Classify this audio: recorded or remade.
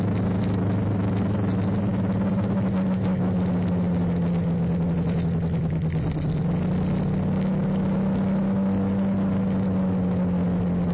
recorded